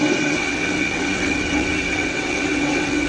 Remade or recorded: remade